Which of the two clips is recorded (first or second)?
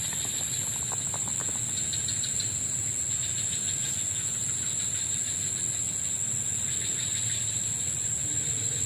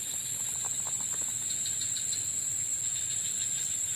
first